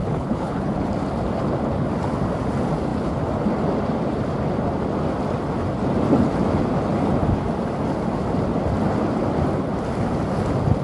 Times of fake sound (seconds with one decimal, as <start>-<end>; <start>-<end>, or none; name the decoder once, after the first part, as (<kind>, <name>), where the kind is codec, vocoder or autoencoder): 0.0-0.9 (codec, HILCodec)